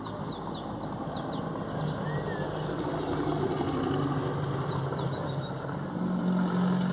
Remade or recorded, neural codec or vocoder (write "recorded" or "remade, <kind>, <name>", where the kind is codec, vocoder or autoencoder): recorded